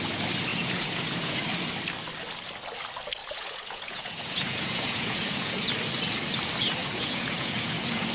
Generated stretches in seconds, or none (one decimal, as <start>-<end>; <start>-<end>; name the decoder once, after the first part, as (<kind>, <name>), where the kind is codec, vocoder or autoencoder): 0.5-1.4 (vocoder, Vocos); 3.2-5.7; 6.8-8.1